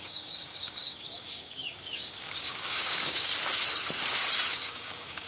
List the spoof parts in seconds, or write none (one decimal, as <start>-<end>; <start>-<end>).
0.0-3.3; 4.5-5.3